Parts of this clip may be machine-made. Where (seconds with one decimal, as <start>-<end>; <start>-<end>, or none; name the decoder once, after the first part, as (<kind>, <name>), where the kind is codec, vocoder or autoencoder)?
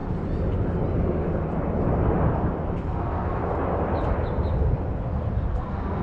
2.9-3.4 (codec, SNAC); 5.5-6.0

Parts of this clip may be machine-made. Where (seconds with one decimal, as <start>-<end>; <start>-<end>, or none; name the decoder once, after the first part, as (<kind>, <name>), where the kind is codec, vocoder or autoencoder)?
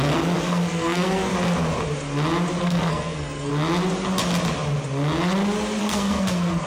0.0-1.3 (codec, SNAC); 2.6-3.5; 5.8-6.7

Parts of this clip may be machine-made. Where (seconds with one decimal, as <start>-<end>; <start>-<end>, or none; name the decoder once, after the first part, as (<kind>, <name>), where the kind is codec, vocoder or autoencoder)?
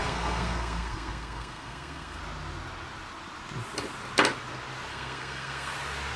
0.0-2.2 (codec, SNAC); 4.9-5.7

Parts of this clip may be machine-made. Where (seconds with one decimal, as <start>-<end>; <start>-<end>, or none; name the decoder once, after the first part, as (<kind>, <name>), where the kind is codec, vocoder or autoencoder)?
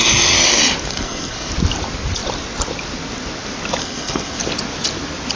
0.9-1.5 (codec, SNAC); 3.8-4.4